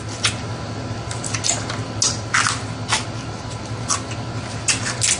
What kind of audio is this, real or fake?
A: real